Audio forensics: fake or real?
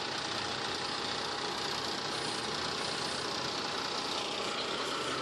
real